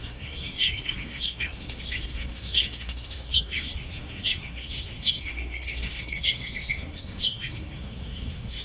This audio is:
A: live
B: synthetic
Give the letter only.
B